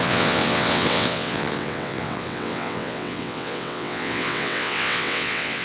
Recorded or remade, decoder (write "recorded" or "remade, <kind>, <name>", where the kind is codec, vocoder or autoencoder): remade, vocoder, WaveNeXt